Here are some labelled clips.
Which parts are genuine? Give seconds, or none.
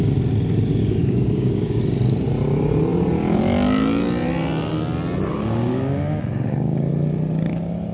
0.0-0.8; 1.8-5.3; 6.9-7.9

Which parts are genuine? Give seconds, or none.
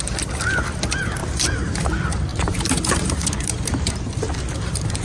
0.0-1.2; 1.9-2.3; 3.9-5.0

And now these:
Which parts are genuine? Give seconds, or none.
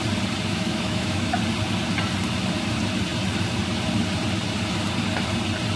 0.0-0.5; 1.3-5.8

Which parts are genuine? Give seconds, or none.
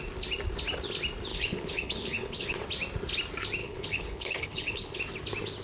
0.0-1.3; 2.6-3.6; 5.0-5.6